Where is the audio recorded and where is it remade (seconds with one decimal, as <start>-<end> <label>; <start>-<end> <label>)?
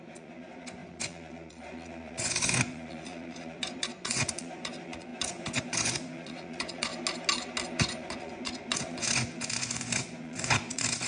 0.0-6.9 remade; 6.9-7.8 recorded; 7.8-11.1 remade